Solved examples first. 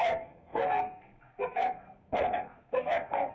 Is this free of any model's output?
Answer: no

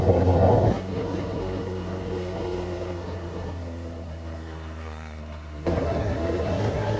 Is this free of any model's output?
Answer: no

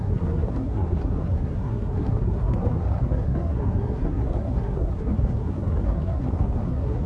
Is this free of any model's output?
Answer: no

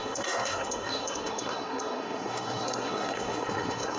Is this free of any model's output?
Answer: no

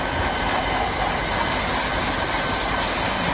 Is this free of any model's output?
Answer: yes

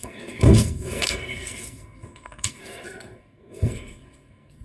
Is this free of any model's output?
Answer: no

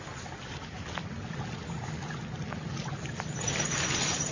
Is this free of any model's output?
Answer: yes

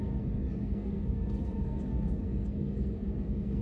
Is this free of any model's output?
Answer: no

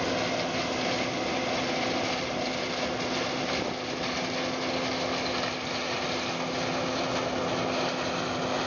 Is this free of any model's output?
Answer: yes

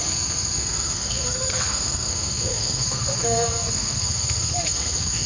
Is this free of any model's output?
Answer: no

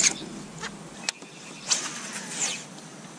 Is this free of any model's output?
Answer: yes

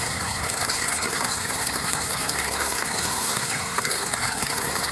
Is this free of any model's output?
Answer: no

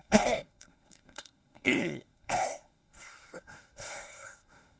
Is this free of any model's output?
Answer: no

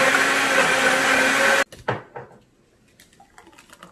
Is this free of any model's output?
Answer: yes